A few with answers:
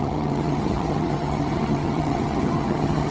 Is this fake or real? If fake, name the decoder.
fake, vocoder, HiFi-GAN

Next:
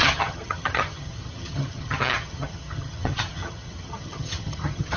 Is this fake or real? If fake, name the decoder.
fake, vocoder, HiFi-GAN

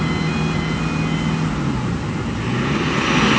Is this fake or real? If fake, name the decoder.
real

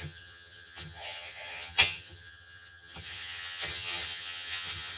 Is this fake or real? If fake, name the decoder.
fake, vocoder, HiFi-GAN